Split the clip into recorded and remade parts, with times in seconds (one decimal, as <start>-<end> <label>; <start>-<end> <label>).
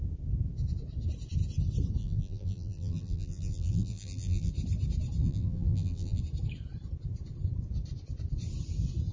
0.0-2.0 recorded; 2.0-4.5 remade; 4.5-5.2 recorded; 5.2-6.2 remade; 6.2-9.1 recorded